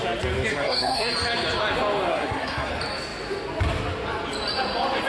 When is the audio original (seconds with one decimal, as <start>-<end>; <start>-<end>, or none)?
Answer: 0.0-0.5; 1.1-2.1; 2.7-5.1